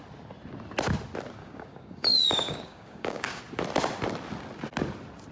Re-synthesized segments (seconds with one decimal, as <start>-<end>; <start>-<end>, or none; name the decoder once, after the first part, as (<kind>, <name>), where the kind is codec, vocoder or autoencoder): 1.4-3.4 (codec, DAC)